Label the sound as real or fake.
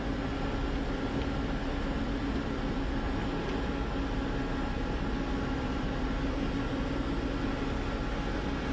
real